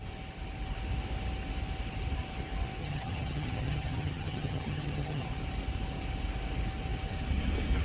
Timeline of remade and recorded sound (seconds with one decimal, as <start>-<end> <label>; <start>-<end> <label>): 0.0-2.8 recorded; 2.8-5.3 remade; 5.3-7.8 recorded